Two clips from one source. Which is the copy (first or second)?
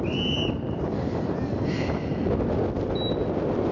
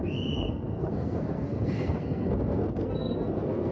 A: second